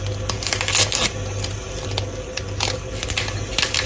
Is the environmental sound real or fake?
real